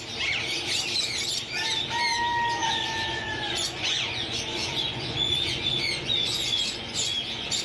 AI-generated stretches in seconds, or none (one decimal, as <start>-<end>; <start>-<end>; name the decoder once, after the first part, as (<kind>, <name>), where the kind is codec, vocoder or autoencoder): 2.6-7.6 (vocoder, Vocos)